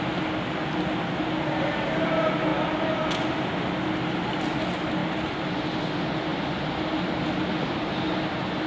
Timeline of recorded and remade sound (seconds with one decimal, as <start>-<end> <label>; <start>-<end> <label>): 0.0-2.5 recorded; 2.5-3.1 remade; 3.1-5.0 recorded; 5.0-5.6 remade; 5.6-8.7 recorded